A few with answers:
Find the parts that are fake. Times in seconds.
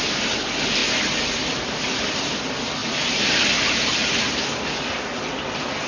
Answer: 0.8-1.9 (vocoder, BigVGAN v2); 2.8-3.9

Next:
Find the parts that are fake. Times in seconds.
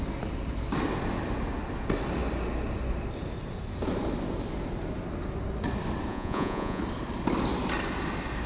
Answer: 6.1-6.8 (vocoder, Vocos)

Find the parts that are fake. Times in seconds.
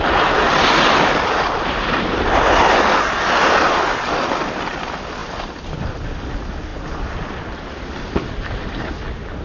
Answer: none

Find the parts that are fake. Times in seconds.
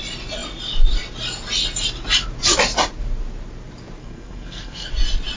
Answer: 4.0-4.9 (codec, SNAC)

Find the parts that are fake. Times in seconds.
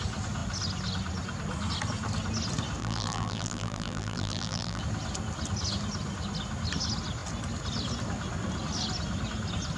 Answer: 2.8-4.8 (vocoder, BigVGAN v2)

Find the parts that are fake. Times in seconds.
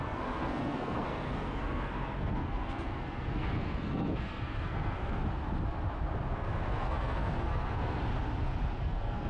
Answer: 0.0-5.2 (codec, SNAC); 6.3-8.0; 8.8-9.3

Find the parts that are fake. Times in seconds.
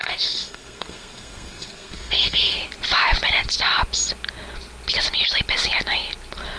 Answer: 0.0-2.6 (codec, SNAC)